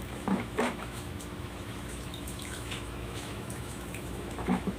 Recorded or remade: remade